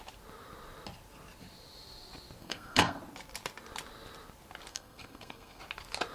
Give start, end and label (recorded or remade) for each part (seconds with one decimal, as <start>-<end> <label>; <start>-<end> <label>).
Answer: 0.0-2.4 recorded; 2.4-3.0 remade; 3.0-4.7 recorded; 4.7-5.6 remade; 5.6-6.1 recorded